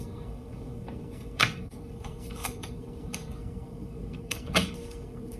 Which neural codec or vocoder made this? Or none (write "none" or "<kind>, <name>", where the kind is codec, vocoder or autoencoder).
codec, SNAC